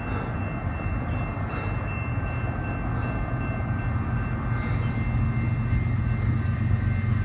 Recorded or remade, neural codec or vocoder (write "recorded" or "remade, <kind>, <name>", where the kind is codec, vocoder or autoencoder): recorded